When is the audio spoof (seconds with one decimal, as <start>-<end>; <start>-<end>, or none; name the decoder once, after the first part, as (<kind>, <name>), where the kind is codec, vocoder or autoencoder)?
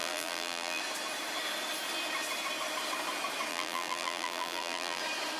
0.0-0.8 (vocoder, BigVGAN v2); 3.5-5.0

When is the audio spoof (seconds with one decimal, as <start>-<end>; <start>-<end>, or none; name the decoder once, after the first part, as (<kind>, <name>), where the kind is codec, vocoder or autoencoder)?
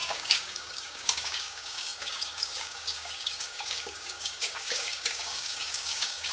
0.0-6.3 (codec, DAC)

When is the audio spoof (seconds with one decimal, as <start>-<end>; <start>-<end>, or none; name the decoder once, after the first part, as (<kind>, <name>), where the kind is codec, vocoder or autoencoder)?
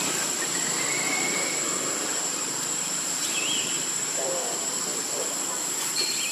1.7-4.2 (vocoder, BigVGAN v2)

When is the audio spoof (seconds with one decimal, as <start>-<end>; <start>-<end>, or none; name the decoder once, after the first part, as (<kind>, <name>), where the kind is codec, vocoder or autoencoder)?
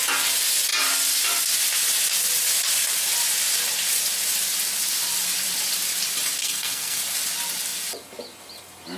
6.4-7.0 (codec, SNAC)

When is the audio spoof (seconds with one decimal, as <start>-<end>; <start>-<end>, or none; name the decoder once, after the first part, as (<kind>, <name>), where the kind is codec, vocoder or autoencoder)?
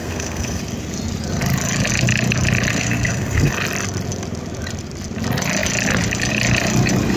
0.0-0.6 (codec, SNAC); 2.7-3.5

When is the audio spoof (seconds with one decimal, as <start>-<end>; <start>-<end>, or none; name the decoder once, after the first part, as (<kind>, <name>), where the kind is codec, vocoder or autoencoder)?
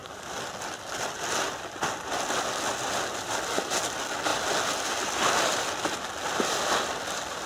none